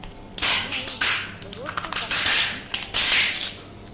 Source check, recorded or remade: recorded